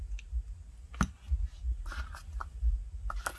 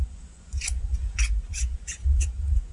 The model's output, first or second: second